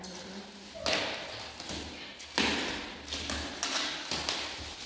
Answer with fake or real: real